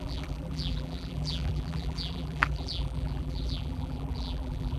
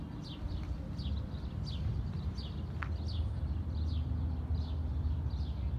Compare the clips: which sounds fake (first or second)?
first